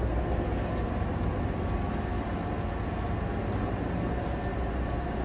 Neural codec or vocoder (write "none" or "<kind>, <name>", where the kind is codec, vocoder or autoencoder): none